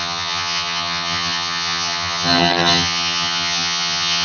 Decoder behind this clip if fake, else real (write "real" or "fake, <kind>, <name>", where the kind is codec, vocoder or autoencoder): fake, vocoder, HiFi-GAN